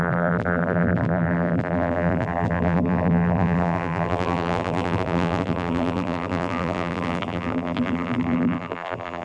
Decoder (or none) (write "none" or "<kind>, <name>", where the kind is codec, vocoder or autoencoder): vocoder, BigVGAN v2